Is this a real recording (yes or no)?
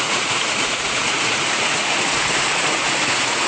no